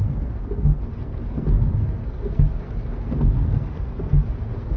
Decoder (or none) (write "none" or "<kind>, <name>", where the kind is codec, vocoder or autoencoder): codec, SNAC